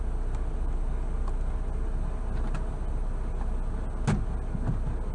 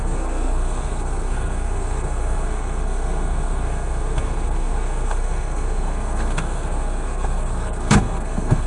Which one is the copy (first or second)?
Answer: second